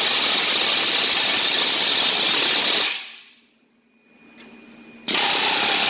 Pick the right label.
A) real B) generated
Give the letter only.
A